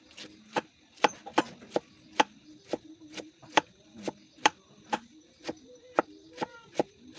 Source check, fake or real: real